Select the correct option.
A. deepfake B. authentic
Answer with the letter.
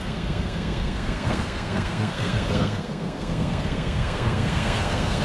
A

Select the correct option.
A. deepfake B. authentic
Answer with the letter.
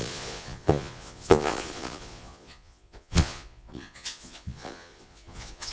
A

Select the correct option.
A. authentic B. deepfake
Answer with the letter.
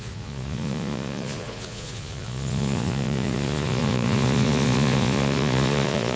B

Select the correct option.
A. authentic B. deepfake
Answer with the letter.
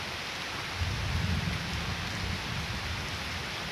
A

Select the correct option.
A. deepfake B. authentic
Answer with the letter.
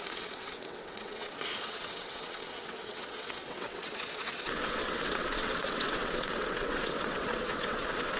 A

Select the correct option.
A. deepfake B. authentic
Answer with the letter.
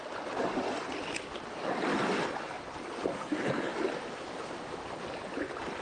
B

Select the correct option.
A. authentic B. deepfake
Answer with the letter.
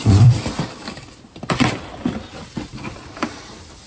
B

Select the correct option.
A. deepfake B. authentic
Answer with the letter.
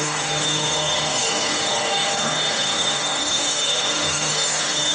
A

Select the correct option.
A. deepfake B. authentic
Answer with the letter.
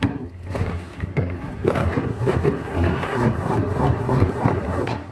A